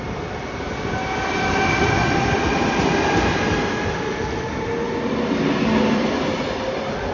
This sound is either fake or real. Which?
real